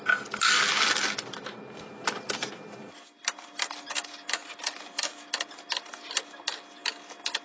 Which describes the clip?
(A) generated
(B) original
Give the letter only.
B